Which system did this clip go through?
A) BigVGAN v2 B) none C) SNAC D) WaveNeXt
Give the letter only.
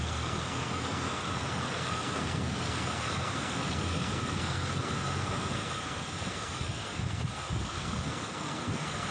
C